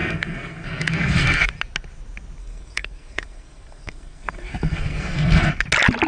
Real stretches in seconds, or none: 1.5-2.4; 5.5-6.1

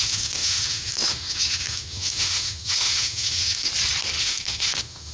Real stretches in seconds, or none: 3.7-4.2

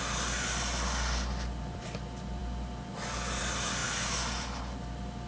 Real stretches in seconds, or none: 0.0-5.3

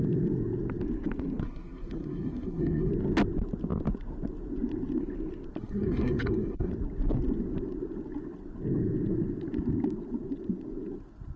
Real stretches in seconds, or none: 0.0-1.4; 2.9-5.6; 6.7-11.4

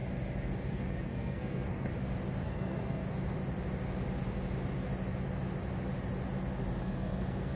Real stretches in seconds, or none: 0.0-0.7; 1.9-2.4; 3.0-6.8

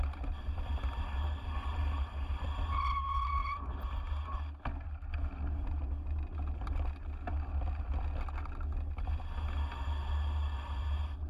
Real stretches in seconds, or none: 0.0-11.3

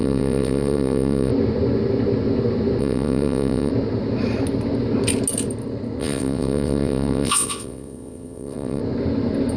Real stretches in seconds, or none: 1.3-2.8; 3.7-6.0; 8.8-9.6